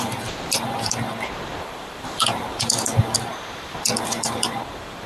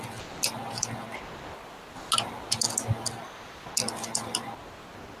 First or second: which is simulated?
first